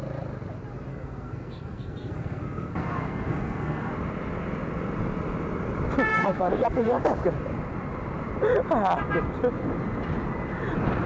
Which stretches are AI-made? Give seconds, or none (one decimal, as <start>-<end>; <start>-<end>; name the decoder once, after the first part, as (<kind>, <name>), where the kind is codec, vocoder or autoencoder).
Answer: 0.9-3.9 (codec, SNAC); 6.1-7.0